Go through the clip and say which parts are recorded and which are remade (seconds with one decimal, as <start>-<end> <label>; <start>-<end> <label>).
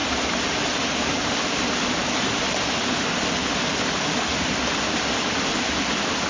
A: 0.0-6.3 recorded